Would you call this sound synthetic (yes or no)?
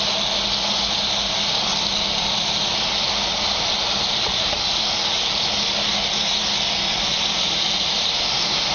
no